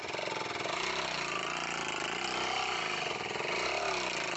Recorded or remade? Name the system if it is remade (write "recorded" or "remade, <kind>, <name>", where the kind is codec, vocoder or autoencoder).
recorded